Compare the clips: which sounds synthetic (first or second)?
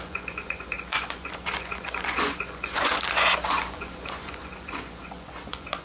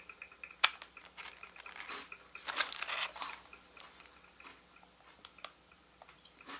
first